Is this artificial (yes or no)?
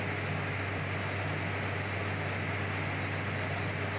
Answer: no